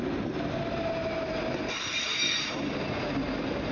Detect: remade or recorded recorded